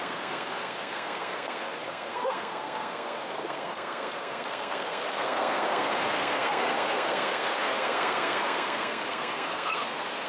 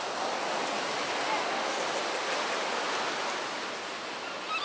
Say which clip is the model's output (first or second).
first